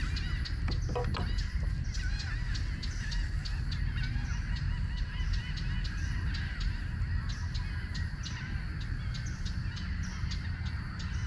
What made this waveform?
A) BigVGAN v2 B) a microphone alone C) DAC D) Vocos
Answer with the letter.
B